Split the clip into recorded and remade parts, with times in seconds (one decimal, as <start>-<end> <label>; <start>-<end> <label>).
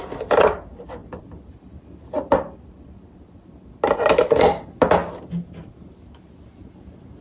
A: 0.0-1.0 recorded; 1.0-3.5 remade; 3.5-7.2 recorded